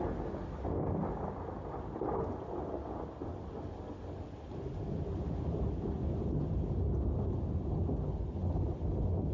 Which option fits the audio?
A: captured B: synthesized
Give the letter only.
A